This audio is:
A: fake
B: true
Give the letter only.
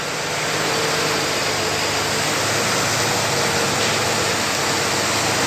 B